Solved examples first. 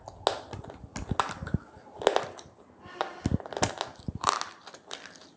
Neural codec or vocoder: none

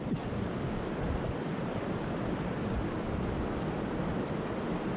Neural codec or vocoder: vocoder, BigVGAN v2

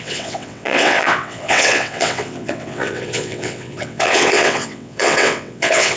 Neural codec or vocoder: vocoder, WaveNeXt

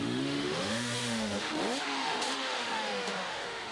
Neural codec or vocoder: autoencoder, DAC-VAE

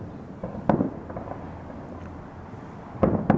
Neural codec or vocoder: none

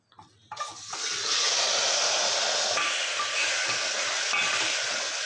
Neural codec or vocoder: none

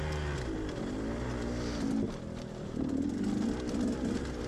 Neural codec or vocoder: none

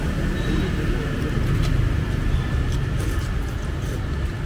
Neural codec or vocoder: none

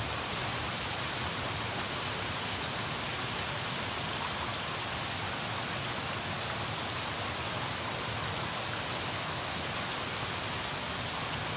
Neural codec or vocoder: none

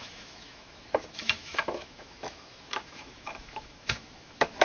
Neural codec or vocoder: autoencoder, DAC-VAE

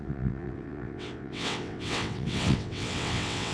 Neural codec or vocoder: vocoder, WaveNeXt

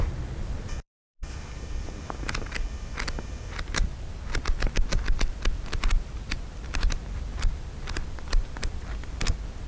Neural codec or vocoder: vocoder, BigVGAN v2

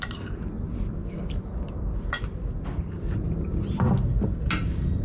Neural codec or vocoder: none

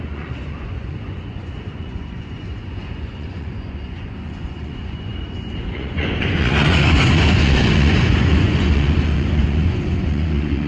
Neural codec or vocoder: vocoder, Vocos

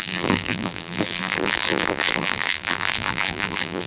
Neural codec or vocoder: vocoder, BigVGAN v2